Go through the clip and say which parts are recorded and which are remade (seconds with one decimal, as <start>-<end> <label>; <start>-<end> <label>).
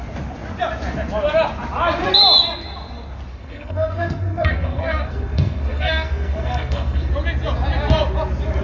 0.0-3.3 recorded; 3.3-7.1 remade; 7.1-8.6 recorded